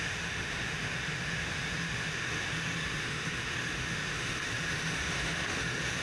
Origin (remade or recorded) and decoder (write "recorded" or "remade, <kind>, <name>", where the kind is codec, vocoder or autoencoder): remade, autoencoder, DAC-VAE